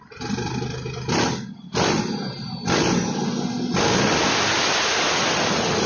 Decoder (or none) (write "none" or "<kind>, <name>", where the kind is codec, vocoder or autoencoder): none